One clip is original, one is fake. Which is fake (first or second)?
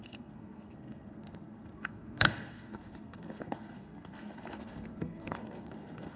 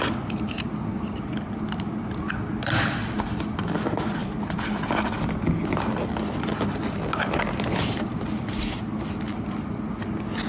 first